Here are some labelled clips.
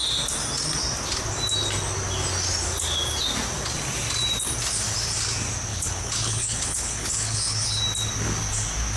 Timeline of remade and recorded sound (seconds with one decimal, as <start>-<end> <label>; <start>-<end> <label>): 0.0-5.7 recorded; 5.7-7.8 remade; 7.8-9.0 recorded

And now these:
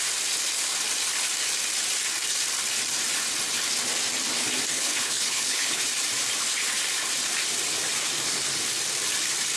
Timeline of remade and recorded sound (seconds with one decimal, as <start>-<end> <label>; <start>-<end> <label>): 0.0-4.7 recorded; 4.7-5.8 remade; 5.8-9.6 recorded

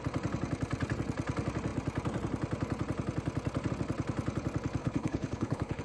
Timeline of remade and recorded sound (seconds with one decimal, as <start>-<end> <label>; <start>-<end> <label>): 0.0-4.8 recorded; 4.8-5.8 remade

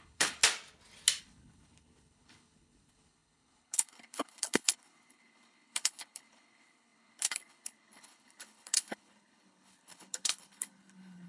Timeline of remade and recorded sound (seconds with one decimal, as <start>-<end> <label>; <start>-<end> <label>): 0.0-0.4 remade; 0.4-1.2 recorded; 1.2-11.3 remade